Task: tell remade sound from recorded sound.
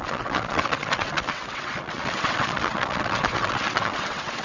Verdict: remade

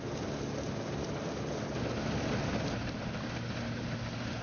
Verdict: recorded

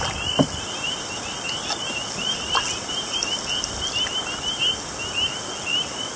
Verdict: recorded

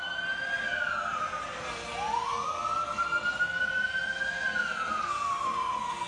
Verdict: recorded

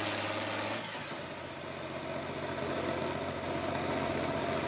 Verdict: recorded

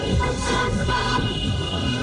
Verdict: remade